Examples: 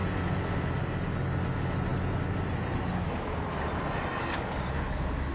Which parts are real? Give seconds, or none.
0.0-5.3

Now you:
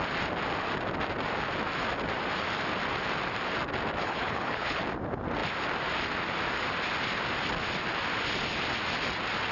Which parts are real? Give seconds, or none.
0.0-4.0; 4.8-9.5